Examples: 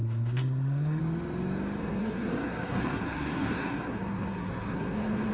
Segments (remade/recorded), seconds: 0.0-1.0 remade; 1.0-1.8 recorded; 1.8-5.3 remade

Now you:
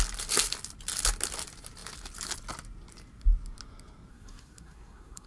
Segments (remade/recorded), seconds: 0.0-4.1 recorded; 4.1-5.3 remade